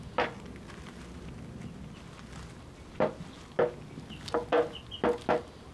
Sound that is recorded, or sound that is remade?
recorded